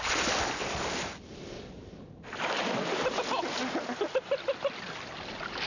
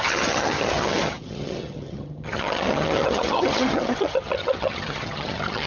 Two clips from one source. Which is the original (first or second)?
first